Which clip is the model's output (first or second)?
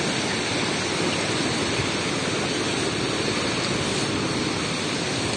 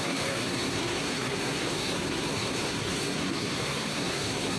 second